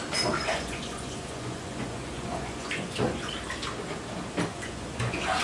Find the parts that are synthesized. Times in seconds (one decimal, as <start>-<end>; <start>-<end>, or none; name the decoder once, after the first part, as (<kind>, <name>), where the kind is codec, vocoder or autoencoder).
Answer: 0.4-3.3 (vocoder, Vocos); 4.5-5.4